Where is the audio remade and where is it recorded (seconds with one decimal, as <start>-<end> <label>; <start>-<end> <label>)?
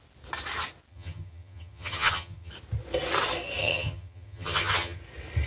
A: 0.0-0.9 recorded; 0.9-2.5 remade; 2.5-3.6 recorded; 3.6-5.0 remade; 5.0-5.5 recorded